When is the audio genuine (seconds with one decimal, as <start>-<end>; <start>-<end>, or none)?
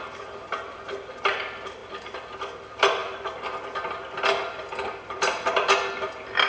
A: 3.0-4.7